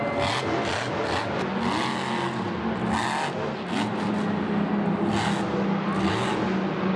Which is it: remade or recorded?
recorded